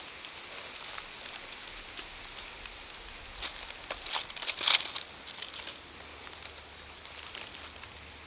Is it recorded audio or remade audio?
recorded